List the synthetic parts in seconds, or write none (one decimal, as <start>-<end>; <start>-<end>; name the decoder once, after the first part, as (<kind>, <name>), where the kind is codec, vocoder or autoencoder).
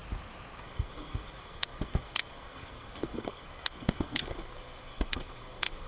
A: 0.6-5.9 (codec, SNAC)